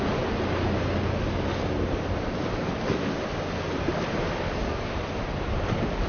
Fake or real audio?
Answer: real